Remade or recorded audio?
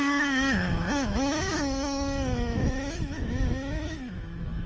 remade